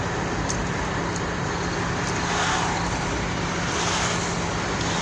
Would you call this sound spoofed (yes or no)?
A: no